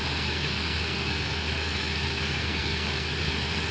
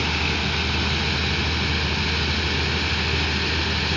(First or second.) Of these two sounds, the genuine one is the second